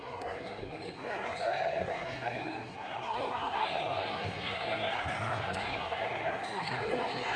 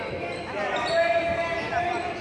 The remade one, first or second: first